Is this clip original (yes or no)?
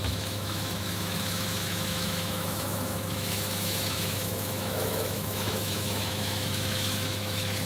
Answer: no